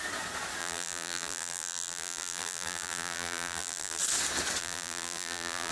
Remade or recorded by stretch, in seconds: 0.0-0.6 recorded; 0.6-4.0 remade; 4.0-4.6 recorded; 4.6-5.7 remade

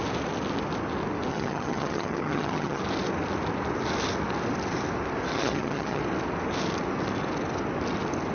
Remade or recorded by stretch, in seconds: 0.0-1.3 recorded; 1.3-2.8 remade; 2.8-5.3 recorded; 5.3-6.0 remade; 6.0-8.3 recorded

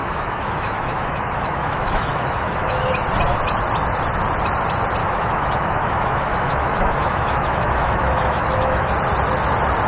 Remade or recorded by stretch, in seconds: 0.0-2.9 remade; 2.9-5.0 recorded; 5.0-8.9 remade; 8.9-9.9 recorded

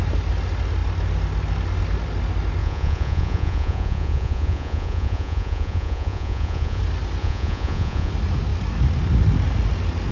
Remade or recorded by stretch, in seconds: 0.0-2.6 recorded; 2.6-6.8 remade; 6.8-7.2 recorded; 7.2-8.1 remade; 8.1-10.1 recorded

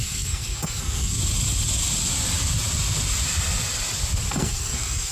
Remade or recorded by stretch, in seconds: 0.0-1.2 remade; 1.2-4.3 recorded; 4.3-5.1 remade

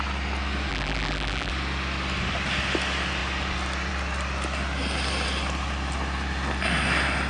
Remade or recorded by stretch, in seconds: 0.0-0.7 recorded; 0.7-1.5 remade; 1.5-7.3 recorded

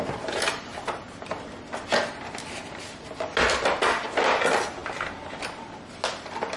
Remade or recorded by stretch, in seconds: 0.0-6.6 recorded